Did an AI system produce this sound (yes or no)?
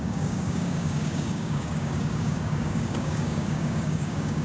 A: yes